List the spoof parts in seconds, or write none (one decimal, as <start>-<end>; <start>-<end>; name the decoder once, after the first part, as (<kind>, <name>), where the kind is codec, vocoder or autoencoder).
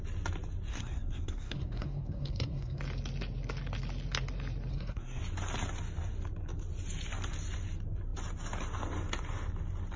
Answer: 0.7-2.8 (codec, SNAC); 4.7-5.2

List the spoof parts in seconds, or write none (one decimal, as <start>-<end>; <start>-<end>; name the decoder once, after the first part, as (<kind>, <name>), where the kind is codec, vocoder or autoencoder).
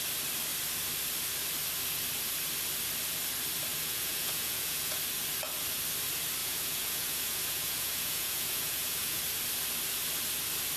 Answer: 3.7-5.0 (vocoder, Vocos); 6.4-9.2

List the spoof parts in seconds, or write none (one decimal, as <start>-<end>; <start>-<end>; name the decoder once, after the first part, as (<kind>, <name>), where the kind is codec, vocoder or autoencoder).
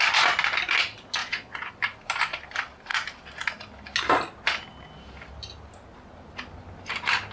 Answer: 1.2-1.7 (vocoder, Vocos)